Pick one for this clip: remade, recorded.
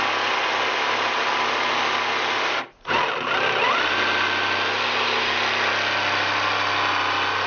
recorded